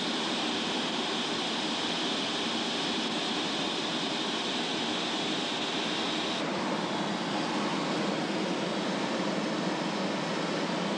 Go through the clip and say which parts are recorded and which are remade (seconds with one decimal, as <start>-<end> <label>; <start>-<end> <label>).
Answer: 0.0-11.0 recorded